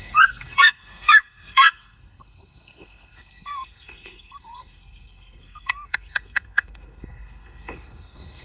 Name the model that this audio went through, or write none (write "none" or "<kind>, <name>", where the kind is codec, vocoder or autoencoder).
codec, SNAC